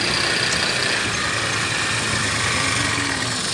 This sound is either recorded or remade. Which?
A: recorded